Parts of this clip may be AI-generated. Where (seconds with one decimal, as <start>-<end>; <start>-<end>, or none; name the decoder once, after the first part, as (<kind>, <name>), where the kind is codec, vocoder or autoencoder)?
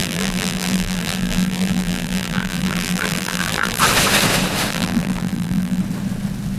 0.0-3.8 (vocoder, BigVGAN v2); 4.7-5.8